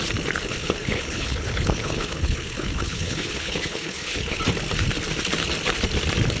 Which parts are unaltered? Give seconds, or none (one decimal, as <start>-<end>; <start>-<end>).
0.0-0.6; 4.4-6.4